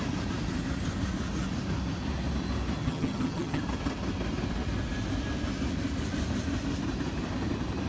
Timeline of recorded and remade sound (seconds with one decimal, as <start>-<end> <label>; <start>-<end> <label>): 0.0-2.8 recorded; 2.8-3.6 remade; 3.6-7.9 recorded